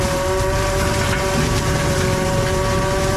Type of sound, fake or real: fake